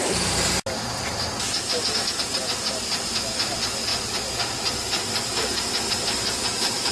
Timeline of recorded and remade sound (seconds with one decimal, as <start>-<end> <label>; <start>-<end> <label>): 0.0-6.9 recorded